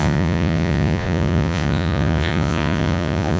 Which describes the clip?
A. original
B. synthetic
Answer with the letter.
B